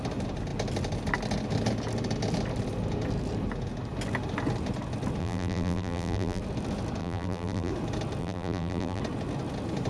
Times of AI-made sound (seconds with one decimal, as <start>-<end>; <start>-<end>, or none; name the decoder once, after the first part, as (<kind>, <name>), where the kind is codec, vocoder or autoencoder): 5.2-6.4 (vocoder, BigVGAN v2); 7.0-7.7; 8.2-9.0